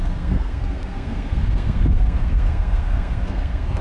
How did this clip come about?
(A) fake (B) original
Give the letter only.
A